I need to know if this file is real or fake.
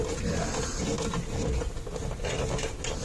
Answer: real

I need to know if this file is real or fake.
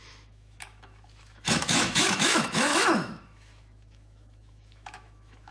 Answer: fake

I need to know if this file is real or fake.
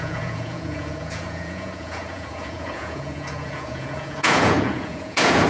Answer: fake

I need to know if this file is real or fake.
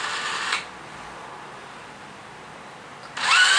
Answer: real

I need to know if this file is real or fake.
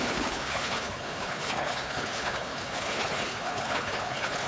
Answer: fake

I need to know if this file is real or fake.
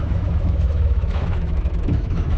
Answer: fake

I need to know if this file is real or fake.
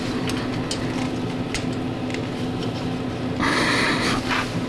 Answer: real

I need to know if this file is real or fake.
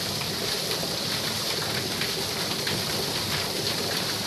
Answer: real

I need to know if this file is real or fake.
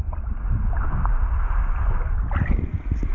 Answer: real